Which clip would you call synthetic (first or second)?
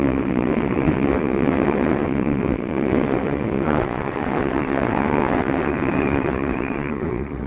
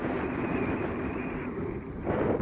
first